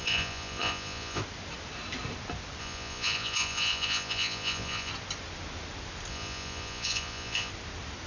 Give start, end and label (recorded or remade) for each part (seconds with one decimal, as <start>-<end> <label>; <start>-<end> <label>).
0.0-1.2 remade; 1.2-2.6 recorded; 2.6-4.9 remade; 4.9-6.1 recorded; 6.1-7.5 remade; 7.5-8.1 recorded